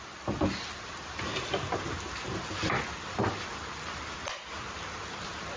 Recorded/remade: remade